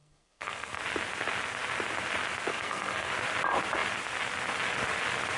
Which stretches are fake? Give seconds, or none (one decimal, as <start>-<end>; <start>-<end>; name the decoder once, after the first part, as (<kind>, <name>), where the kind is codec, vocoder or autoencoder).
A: 0.0-0.8 (codec, SNAC); 2.5-3.1